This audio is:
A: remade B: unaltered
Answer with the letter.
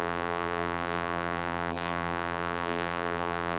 A